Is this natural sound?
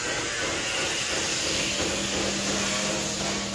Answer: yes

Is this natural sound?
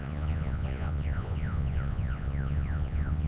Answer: no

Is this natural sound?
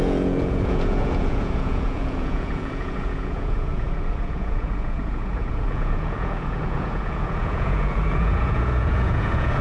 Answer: no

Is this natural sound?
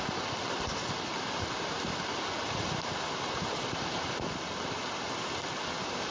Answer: yes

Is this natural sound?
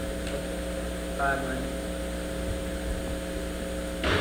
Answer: yes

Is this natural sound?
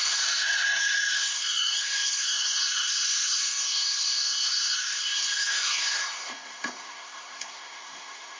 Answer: no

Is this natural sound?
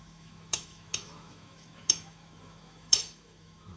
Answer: no